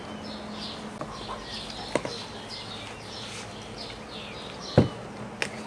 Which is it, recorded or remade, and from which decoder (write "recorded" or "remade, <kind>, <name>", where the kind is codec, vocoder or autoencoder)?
recorded